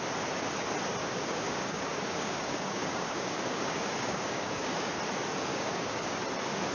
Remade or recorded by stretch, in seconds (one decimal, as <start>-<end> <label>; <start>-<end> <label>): 0.0-1.0 recorded; 1.0-5.0 remade; 5.0-5.5 recorded; 5.5-6.2 remade; 6.2-6.7 recorded